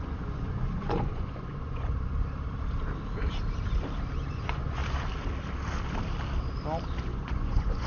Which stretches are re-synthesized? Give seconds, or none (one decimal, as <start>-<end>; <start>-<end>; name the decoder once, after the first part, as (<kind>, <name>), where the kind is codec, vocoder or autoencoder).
0.0-2.1 (vocoder, Vocos); 4.3-4.8; 7.0-7.9